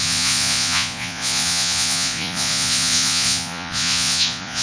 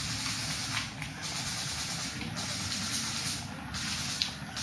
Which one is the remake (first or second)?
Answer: first